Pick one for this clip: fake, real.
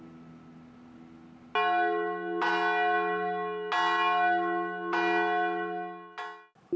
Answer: real